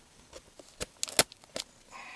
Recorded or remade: recorded